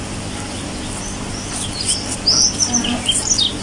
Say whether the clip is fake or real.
real